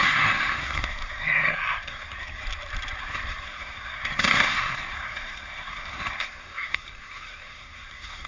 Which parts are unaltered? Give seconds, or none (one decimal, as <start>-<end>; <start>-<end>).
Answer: 2.4-3.0